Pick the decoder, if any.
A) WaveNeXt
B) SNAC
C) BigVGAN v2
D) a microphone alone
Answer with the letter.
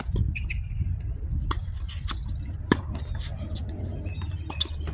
D